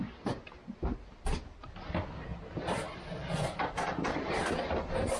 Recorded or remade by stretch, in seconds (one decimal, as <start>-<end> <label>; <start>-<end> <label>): 0.0-2.3 recorded; 2.3-2.8 remade; 2.8-3.2 recorded; 3.2-4.4 remade; 4.4-5.2 recorded